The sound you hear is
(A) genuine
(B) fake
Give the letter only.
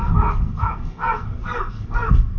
B